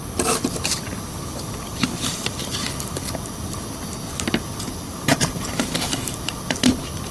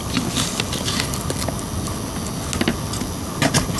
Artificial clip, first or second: first